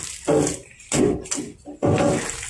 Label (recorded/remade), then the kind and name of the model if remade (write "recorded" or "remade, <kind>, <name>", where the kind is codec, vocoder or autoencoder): recorded